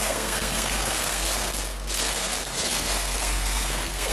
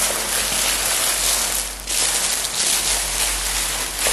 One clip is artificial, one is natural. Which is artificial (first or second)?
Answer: first